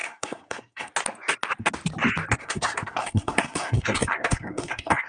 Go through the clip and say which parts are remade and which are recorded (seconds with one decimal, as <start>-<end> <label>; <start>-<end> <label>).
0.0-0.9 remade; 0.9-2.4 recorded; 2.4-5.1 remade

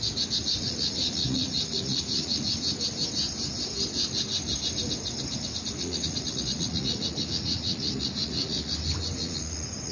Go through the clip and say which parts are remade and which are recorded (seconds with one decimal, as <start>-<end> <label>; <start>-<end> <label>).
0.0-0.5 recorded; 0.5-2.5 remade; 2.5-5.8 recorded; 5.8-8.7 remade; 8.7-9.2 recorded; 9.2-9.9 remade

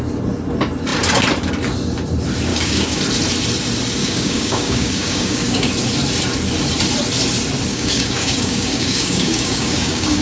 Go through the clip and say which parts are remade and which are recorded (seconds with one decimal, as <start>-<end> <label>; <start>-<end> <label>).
0.0-2.5 recorded; 2.5-3.0 remade; 3.0-4.0 recorded; 4.0-5.7 remade; 5.7-7.7 recorded; 7.7-10.2 remade